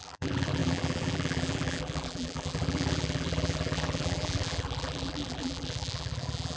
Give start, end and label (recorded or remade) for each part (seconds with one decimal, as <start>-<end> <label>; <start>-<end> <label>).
0.0-6.6 remade